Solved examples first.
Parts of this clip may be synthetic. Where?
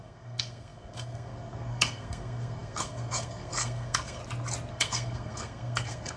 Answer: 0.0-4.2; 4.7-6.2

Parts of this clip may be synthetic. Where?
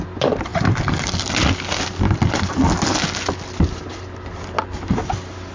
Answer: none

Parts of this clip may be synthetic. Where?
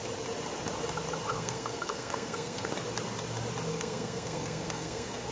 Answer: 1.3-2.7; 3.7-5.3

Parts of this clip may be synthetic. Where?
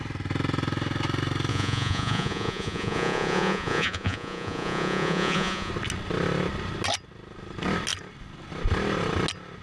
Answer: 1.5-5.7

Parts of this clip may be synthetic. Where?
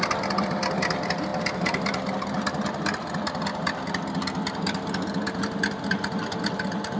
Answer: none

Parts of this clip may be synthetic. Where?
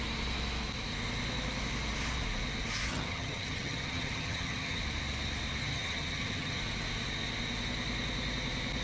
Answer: 2.9-4.8; 5.6-6.6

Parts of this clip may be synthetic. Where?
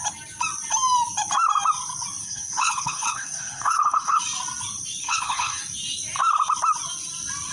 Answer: 2.2-4.2; 5.0-5.6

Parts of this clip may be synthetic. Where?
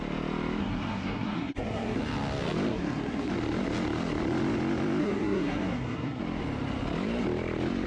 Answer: 0.6-2.0; 2.7-3.3; 5.0-6.2